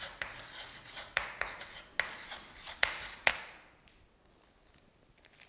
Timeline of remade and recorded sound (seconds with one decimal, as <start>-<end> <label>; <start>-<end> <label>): 0.0-1.9 remade; 1.9-2.8 recorded; 2.8-3.3 remade; 3.3-5.5 recorded